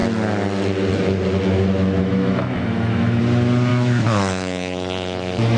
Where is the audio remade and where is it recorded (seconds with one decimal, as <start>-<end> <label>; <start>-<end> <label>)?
0.0-2.0 recorded; 2.0-3.2 remade; 3.2-3.7 recorded; 3.7-5.6 remade